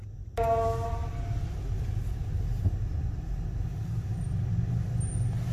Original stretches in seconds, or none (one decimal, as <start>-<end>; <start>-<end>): 0.0-5.5